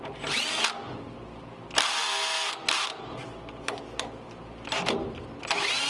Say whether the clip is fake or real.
real